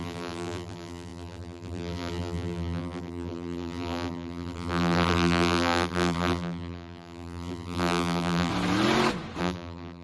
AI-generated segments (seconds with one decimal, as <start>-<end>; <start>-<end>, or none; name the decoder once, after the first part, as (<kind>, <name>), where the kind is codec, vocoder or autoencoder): 0.0-8.5 (vocoder, BigVGAN v2); 9.4-10.0